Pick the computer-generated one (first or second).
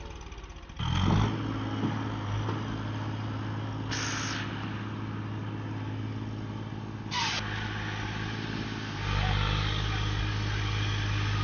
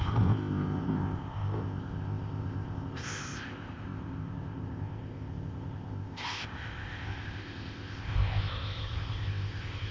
second